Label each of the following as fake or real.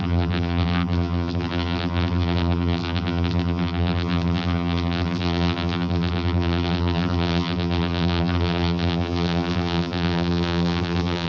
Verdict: fake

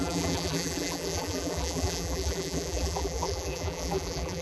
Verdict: fake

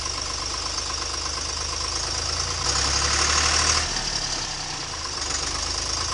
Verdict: real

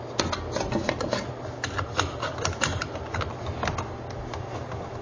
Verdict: real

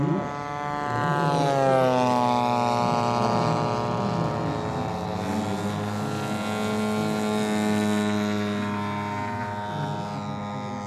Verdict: real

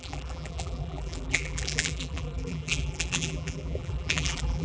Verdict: fake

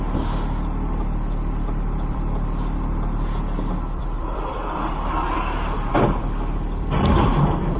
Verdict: fake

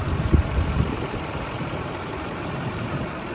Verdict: fake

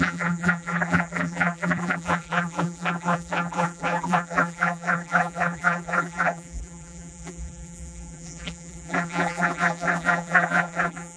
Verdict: fake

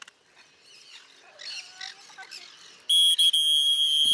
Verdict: real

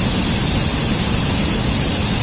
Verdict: real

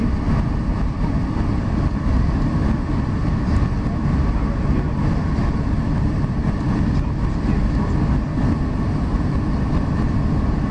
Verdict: real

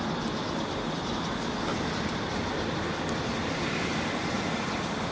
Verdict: fake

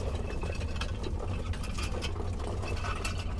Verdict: real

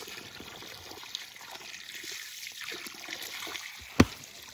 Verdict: real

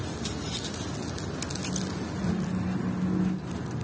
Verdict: real